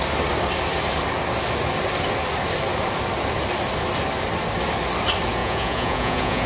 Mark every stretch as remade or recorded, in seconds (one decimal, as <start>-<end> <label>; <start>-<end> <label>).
0.0-5.4 recorded; 5.4-6.5 remade